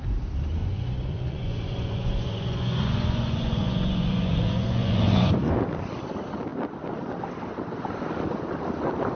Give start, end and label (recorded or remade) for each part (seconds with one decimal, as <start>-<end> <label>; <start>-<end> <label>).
0.0-0.6 recorded; 0.6-5.6 remade; 5.6-9.1 recorded